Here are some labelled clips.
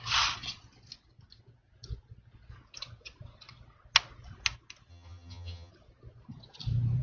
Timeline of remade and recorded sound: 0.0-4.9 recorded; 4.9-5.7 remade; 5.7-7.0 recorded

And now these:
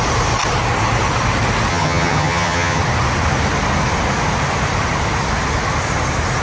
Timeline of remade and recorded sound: 0.0-1.7 recorded; 1.7-2.8 remade; 2.8-6.4 recorded

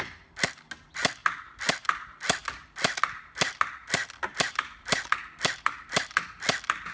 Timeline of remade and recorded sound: 0.0-6.9 recorded

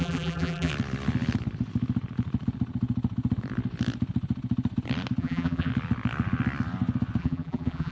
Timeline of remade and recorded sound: 0.0-0.7 remade; 0.7-5.2 recorded; 5.2-5.7 remade; 5.7-7.2 recorded; 7.2-7.9 remade

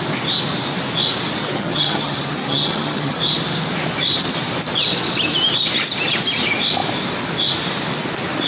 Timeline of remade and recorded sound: 0.0-1.4 recorded; 1.4-3.2 remade; 3.2-8.5 recorded

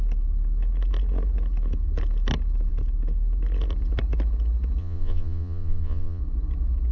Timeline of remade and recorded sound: 0.0-4.8 recorded; 4.8-6.2 remade; 6.2-6.9 recorded

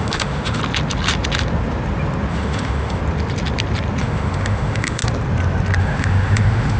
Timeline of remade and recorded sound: 0.0-0.6 remade; 0.6-2.3 recorded; 2.3-3.0 remade; 3.0-4.0 recorded; 4.0-5.0 remade; 5.0-5.8 recorded; 5.8-6.8 remade

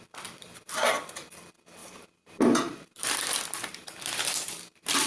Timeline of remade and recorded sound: 0.0-1.8 recorded; 1.8-5.1 remade